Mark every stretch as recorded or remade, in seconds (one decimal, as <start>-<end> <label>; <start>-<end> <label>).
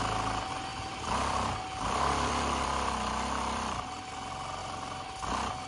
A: 0.0-0.7 recorded; 0.7-4.1 remade; 4.1-5.7 recorded